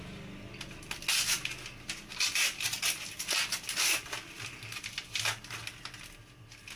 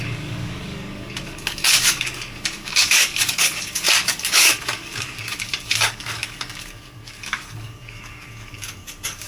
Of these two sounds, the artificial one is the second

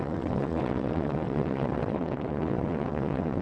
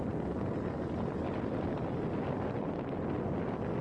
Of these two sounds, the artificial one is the first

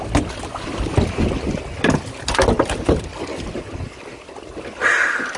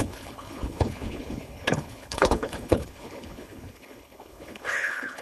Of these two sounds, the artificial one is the second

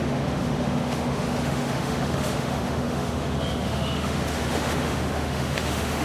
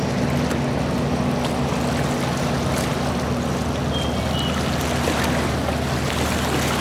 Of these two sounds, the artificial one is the first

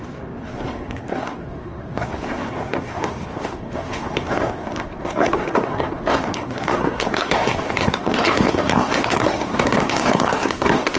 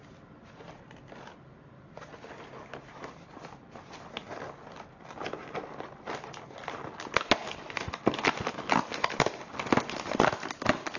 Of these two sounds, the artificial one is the first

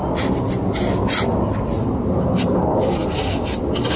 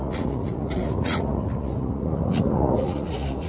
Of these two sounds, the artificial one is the second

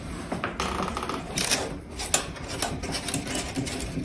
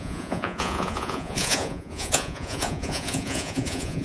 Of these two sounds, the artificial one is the second